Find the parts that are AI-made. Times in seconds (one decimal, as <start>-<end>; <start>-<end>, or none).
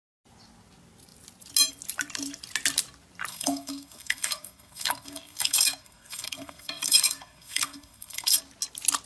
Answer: 3.3-8.4